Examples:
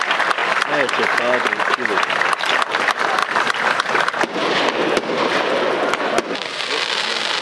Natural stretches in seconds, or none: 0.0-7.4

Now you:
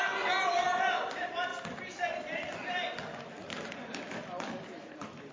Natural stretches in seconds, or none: 0.0-5.3

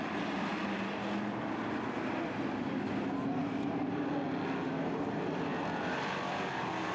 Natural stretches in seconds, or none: 0.0-6.9

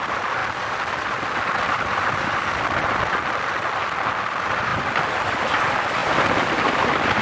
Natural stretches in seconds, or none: 0.0-6.0

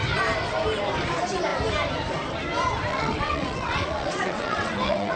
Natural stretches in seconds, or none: 0.0-2.9

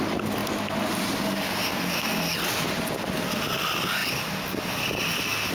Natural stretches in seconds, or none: 0.0-5.5

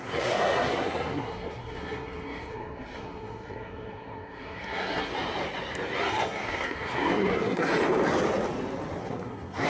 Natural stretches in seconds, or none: 5.1-6.1; 7.7-9.0

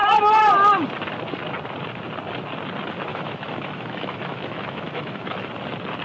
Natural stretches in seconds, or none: 0.0-3.1; 5.5-6.0